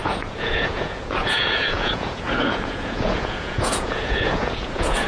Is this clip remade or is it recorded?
remade